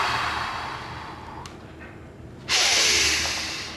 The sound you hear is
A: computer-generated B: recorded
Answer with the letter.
B